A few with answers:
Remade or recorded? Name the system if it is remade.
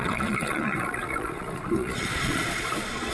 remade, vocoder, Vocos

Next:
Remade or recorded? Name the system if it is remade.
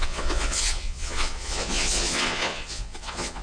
remade, vocoder, Vocos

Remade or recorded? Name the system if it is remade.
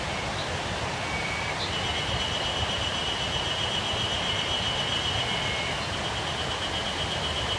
recorded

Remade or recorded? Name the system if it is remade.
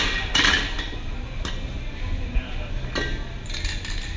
recorded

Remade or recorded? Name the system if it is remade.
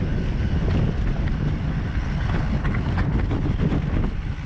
recorded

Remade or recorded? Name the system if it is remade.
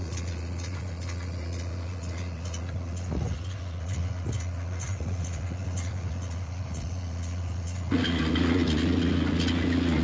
remade, vocoder, Vocos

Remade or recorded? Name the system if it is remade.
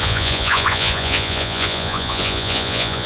remade, vocoder, Vocos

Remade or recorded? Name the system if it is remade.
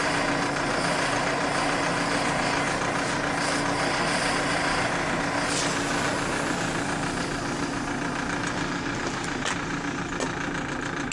recorded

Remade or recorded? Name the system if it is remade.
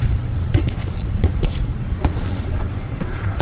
remade, vocoder, Vocos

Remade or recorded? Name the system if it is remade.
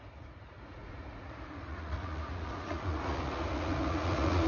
remade, vocoder, Vocos